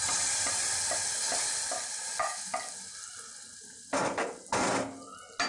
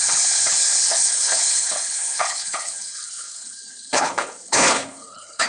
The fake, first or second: second